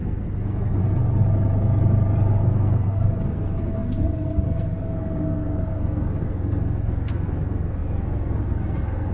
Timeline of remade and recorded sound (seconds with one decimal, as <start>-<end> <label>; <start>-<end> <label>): 0.0-0.8 remade; 0.8-2.3 recorded; 2.3-9.1 remade